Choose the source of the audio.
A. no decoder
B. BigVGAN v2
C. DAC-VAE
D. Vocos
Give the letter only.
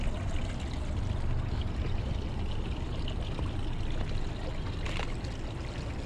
A